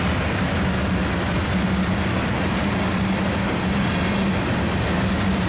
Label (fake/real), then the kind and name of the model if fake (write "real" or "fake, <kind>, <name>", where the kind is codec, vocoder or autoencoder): real